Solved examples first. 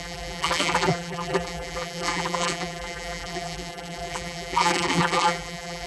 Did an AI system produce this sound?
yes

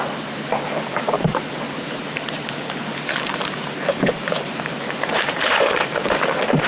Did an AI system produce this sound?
yes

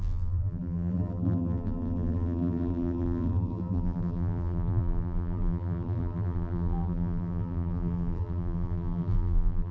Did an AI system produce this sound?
yes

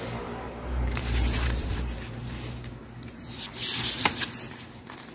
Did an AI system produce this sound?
yes